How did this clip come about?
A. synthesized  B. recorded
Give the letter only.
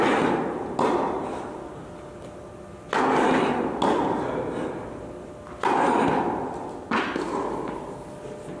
B